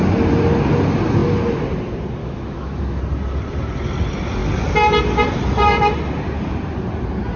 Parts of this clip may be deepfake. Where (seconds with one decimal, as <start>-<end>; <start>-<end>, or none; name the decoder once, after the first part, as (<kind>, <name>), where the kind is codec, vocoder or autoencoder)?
2.2-3.0 (autoencoder, DAC-VAE)